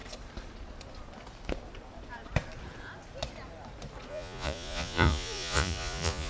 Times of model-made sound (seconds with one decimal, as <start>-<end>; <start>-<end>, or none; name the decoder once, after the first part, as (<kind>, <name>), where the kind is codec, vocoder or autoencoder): 4.1-6.3 (vocoder, Vocos)